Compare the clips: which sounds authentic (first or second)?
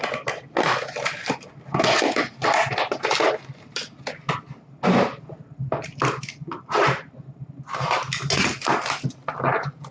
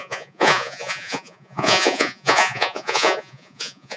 first